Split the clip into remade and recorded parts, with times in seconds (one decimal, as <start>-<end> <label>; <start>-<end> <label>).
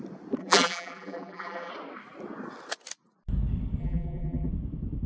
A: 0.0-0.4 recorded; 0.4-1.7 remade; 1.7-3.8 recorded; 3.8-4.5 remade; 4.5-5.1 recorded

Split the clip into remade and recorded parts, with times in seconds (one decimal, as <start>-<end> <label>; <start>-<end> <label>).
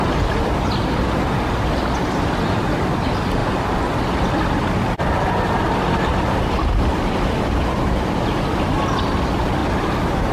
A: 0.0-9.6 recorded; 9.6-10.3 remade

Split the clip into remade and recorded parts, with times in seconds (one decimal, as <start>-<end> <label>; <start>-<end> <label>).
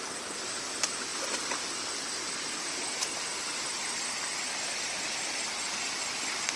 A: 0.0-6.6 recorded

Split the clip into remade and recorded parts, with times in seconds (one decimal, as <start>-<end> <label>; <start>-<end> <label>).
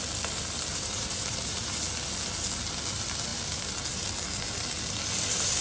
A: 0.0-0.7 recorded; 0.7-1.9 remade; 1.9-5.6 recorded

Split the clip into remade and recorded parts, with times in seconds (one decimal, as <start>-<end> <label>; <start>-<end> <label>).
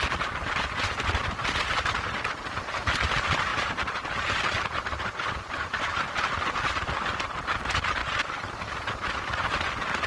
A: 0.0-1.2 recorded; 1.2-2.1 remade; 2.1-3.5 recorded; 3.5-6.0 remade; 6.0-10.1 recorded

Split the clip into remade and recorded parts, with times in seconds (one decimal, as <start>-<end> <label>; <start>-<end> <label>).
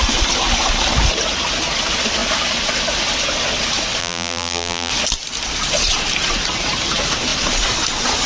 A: 0.0-4.0 recorded; 4.0-4.9 remade; 4.9-8.3 recorded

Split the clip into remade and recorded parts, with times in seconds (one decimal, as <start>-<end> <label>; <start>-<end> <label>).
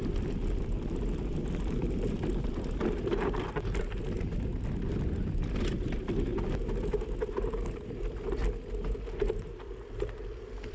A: 0.0-6.3 remade; 6.3-6.9 recorded; 6.9-8.4 remade; 8.4-9.3 recorded; 9.3-10.7 remade